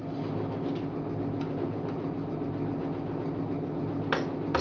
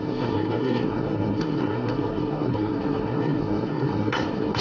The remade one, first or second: second